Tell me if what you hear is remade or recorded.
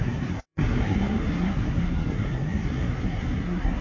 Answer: remade